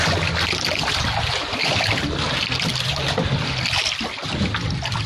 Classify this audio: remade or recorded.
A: recorded